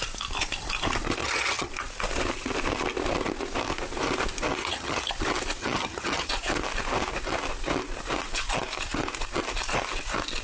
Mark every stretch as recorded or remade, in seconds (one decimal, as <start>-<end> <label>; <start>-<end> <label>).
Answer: 0.0-1.2 recorded; 1.2-1.7 remade; 1.7-4.6 recorded; 4.6-5.1 remade; 5.1-5.6 recorded; 5.6-6.3 remade; 6.3-10.4 recorded